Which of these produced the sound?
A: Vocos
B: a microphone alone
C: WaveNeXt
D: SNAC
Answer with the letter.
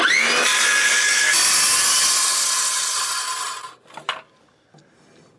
B